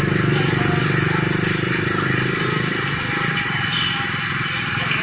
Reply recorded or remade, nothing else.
recorded